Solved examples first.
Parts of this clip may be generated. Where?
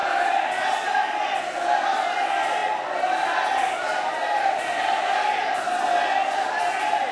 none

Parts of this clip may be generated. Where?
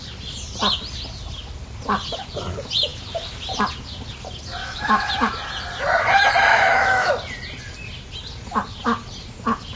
4.6-5.1 (autoencoder, DAC-VAE); 6.5-7.1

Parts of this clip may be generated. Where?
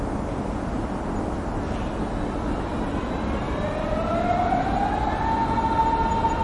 none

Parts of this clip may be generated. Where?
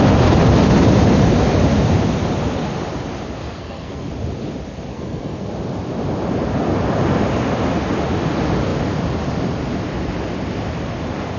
3.4-4.1 (codec, SNAC); 4.9-5.5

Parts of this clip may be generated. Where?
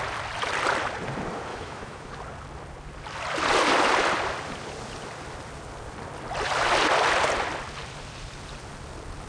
1.5-2.1 (autoencoder, DAC-VAE)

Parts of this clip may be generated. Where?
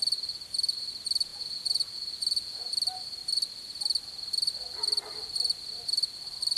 1.3-2.7 (vocoder, Vocos)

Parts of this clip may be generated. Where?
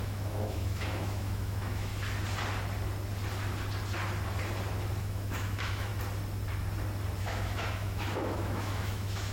0.0-1.9 (autoencoder, DAC-VAE); 5.0-5.9; 7.2-9.3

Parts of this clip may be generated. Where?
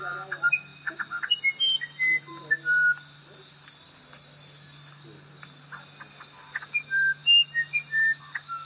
none